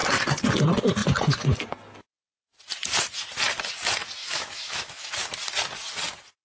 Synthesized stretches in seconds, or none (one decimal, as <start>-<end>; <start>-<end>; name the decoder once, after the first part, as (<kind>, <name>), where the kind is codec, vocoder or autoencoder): 4.2-5.1 (autoencoder, DAC-VAE)